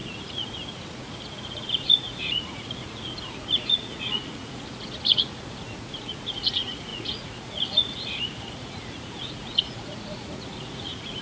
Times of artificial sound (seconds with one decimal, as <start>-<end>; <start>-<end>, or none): 0.0-11.2